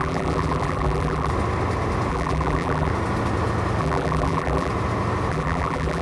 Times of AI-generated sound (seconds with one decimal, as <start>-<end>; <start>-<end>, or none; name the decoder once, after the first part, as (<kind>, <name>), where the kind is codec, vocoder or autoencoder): 0.0-1.3 (vocoder, BigVGAN v2); 2.1-2.9; 3.8-4.7; 5.3-6.0